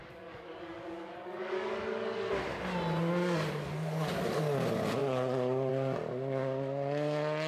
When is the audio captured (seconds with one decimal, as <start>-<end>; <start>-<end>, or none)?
2.3-3.2; 4.1-7.5